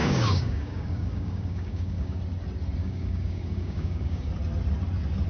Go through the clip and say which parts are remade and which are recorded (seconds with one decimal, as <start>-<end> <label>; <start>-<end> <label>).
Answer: 0.0-2.2 remade; 2.2-2.8 recorded; 2.8-4.3 remade; 4.3-5.3 recorded